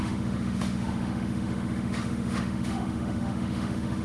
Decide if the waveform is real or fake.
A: fake